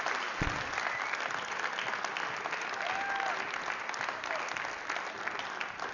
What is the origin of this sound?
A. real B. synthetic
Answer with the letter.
A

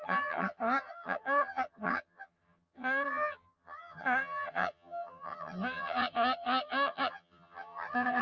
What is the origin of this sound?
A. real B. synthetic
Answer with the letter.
B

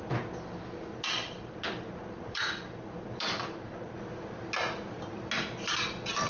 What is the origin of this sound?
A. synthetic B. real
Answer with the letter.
B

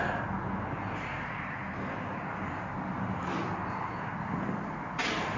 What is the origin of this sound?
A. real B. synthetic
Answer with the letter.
A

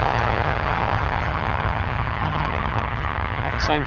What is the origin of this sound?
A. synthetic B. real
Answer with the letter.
A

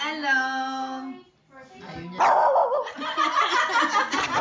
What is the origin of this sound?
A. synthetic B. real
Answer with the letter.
B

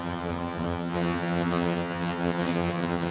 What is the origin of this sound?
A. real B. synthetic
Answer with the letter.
B